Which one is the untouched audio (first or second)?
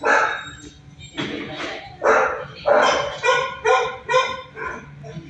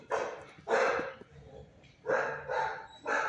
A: first